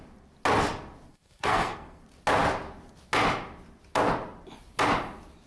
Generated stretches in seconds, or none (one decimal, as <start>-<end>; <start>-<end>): 1.1-2.0